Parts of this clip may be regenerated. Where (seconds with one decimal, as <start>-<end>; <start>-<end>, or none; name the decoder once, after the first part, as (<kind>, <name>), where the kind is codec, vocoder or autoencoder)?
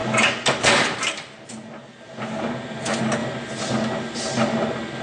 3.2-3.7 (vocoder, BigVGAN v2)